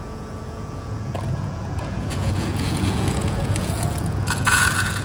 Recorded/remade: remade